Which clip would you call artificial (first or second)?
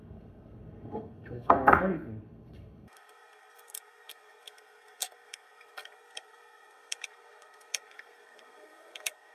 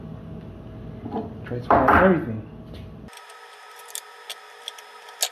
first